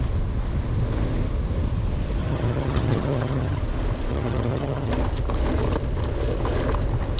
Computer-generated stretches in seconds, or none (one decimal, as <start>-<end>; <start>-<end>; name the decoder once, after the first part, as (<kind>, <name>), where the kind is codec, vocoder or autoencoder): 2.2-3.6 (vocoder, HiFi-GAN); 4.1-4.9